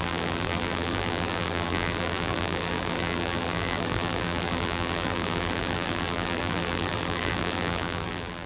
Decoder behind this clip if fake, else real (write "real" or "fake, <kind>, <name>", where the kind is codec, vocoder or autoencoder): fake, vocoder, BigVGAN v2